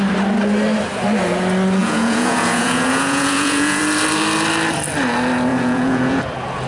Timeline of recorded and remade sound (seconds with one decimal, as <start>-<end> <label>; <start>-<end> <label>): 0.0-1.8 recorded; 1.8-3.8 remade; 3.8-5.5 recorded; 5.5-6.2 remade; 6.2-6.7 recorded